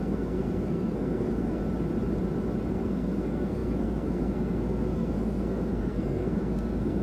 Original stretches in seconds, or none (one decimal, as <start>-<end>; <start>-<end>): 1.6-2.7